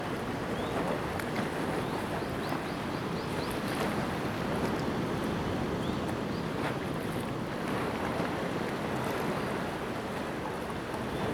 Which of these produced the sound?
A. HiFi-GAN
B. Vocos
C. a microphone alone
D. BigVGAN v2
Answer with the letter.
C